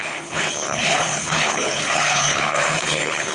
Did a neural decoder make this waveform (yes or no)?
yes